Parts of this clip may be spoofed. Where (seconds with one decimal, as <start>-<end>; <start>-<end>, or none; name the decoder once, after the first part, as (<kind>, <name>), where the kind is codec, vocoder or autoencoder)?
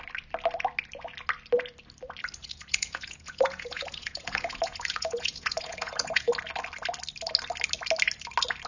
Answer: 2.4-6.3 (vocoder, Vocos)